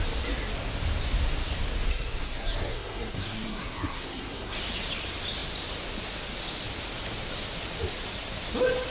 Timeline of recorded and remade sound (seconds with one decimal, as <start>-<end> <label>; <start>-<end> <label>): 0.0-1.9 recorded; 1.9-4.6 remade; 4.6-8.9 recorded